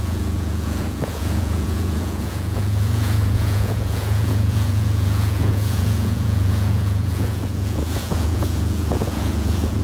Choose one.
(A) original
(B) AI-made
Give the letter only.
B